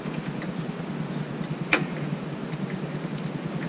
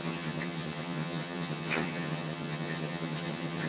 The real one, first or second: first